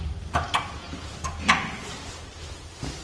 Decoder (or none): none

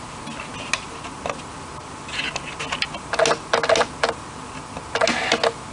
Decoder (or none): none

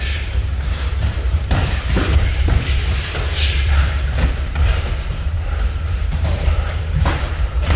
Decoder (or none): vocoder, BigVGAN v2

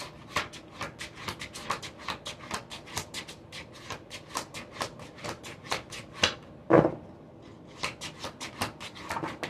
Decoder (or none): none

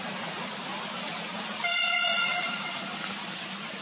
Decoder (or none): none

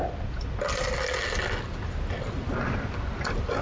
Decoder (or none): none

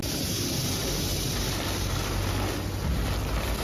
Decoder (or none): none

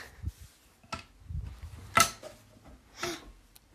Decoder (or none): none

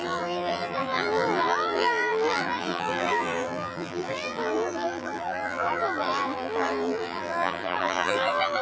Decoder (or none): vocoder, BigVGAN v2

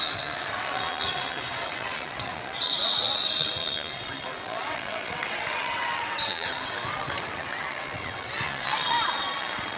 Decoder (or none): vocoder, WaveNeXt